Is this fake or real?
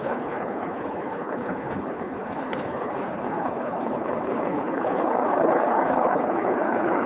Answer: fake